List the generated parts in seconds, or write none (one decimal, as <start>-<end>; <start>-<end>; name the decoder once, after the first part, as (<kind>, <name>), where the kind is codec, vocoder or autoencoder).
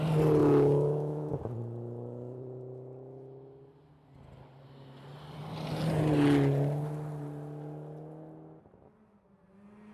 0.4-1.3 (autoencoder, DAC-VAE)